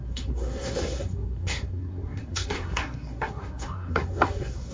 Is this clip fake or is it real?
fake